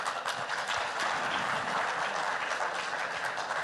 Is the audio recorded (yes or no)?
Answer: yes